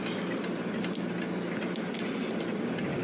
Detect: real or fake real